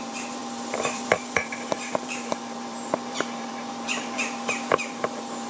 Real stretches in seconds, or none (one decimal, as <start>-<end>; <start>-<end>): none